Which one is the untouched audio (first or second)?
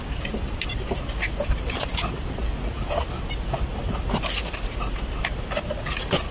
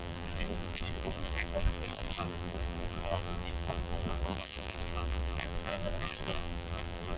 first